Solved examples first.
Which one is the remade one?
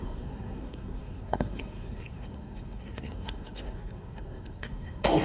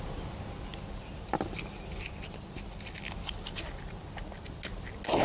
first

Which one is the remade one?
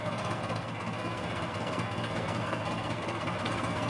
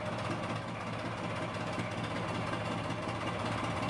first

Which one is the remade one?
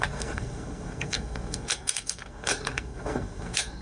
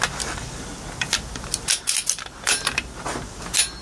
first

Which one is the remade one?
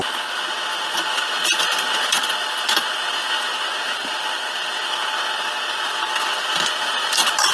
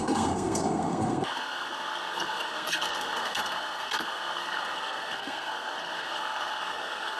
second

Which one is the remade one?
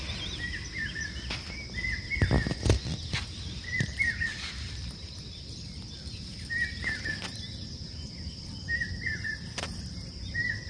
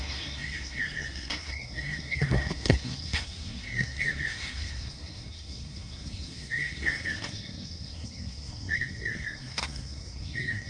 second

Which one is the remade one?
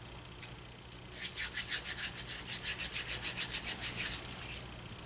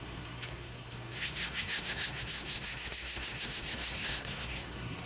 second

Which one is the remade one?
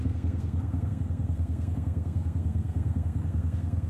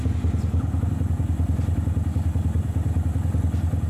first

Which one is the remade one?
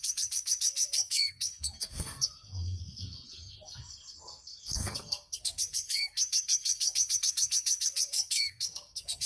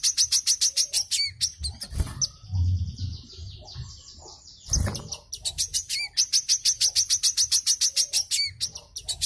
first